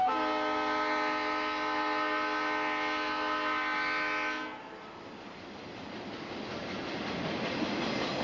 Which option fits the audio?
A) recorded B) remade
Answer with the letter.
A